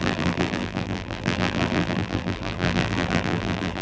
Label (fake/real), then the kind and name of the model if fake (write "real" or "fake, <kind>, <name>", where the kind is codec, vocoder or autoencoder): fake, vocoder, BigVGAN v2